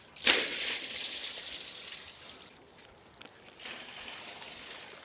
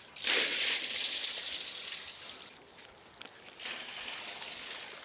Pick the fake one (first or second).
first